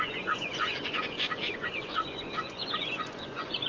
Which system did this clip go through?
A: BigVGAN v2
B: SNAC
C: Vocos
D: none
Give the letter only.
C